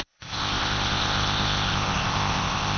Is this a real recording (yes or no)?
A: no